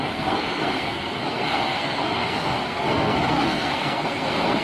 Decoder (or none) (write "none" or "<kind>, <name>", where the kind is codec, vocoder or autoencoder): codec, SNAC